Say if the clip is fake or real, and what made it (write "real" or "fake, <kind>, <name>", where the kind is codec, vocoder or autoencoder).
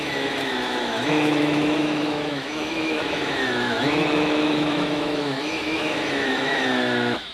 fake, autoencoder, DAC-VAE